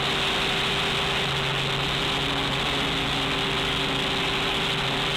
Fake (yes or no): no